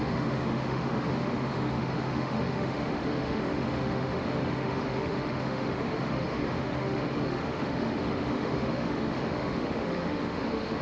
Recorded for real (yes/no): no